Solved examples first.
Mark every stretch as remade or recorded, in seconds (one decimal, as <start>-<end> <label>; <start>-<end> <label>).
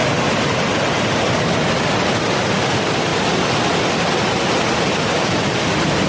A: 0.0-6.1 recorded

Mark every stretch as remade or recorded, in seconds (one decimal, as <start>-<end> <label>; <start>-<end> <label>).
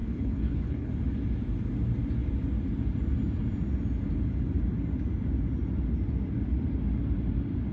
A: 0.0-0.9 remade; 0.9-7.7 recorded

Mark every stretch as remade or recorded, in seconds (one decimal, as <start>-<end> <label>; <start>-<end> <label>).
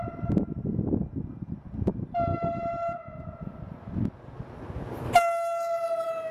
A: 0.0-6.3 recorded